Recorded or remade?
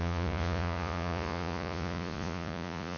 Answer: remade